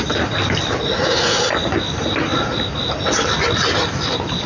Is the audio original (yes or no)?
yes